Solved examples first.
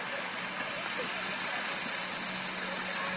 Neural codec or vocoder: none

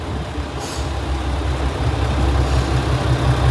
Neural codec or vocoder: none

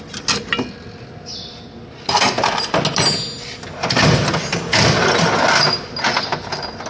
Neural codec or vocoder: none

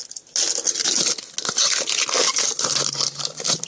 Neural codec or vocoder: none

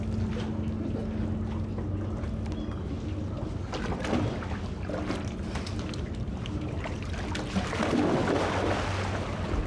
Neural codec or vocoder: none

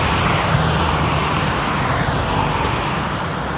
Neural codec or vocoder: none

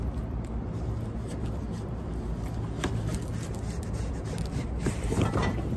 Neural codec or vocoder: none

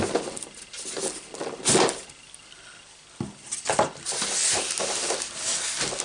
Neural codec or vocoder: none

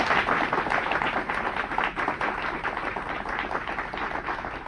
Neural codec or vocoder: none